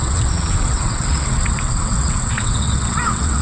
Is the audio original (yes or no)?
no